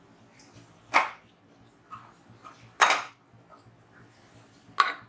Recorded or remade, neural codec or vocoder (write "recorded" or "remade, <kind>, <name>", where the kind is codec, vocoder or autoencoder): recorded